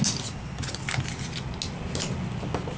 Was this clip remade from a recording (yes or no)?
no